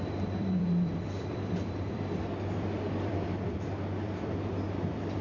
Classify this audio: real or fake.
fake